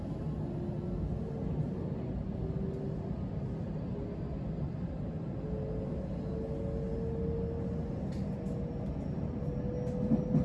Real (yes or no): yes